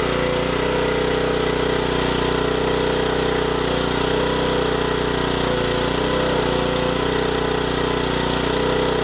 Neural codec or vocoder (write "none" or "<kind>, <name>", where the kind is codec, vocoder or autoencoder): none